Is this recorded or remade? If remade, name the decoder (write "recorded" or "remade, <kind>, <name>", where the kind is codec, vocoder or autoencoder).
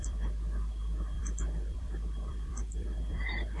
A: remade, vocoder, BigVGAN v2